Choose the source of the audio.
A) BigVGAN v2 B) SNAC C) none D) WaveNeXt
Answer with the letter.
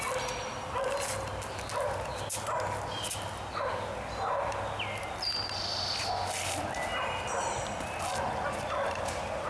C